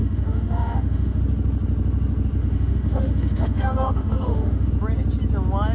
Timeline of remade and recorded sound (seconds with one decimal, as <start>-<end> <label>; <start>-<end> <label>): 0.0-1.2 remade; 1.2-2.4 recorded; 2.4-4.7 remade; 4.7-5.7 recorded